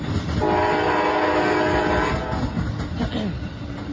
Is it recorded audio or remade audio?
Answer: recorded